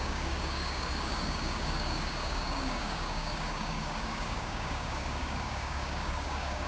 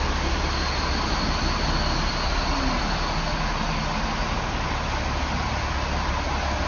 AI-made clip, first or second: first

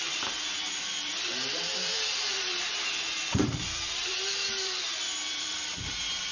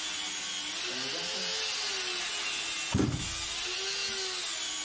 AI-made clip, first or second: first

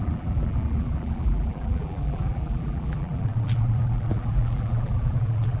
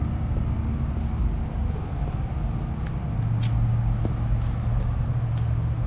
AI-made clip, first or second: first